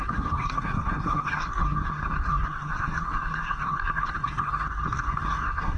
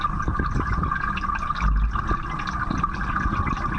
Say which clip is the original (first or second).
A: second